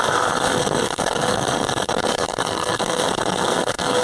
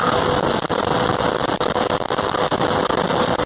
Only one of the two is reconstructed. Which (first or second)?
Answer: first